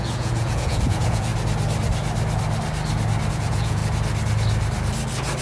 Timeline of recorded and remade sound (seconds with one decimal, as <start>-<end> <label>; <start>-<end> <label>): 0.0-1.3 remade; 1.3-3.3 recorded; 3.3-3.8 remade; 3.8-5.4 recorded